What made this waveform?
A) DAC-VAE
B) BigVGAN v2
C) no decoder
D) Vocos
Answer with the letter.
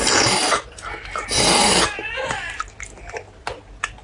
C